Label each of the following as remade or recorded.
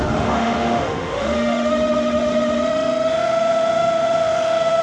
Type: remade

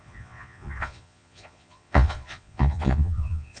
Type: remade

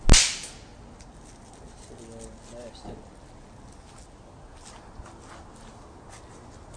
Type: recorded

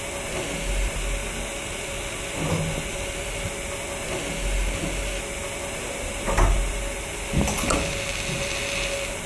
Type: recorded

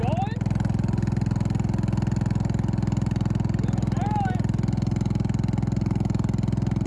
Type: recorded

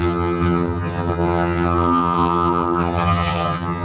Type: remade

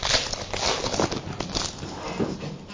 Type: recorded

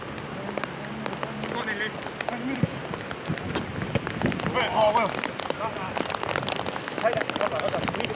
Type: recorded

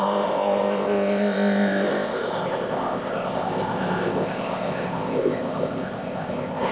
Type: remade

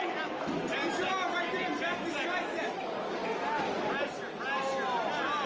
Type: recorded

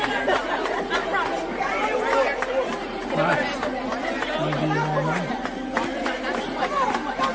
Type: recorded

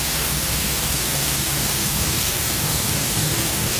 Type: remade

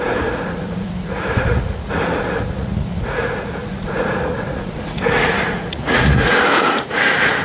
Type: remade